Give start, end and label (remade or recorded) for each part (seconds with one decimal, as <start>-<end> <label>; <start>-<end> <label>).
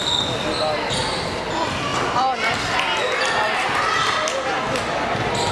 0.0-5.5 recorded